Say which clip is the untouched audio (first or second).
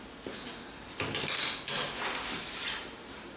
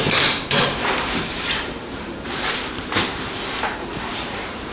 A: first